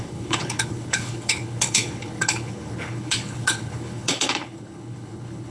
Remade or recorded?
remade